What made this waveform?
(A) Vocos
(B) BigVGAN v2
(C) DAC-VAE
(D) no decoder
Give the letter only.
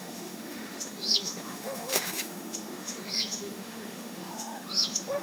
C